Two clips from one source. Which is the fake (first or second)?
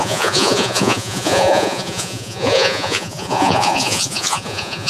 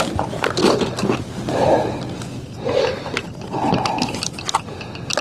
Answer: first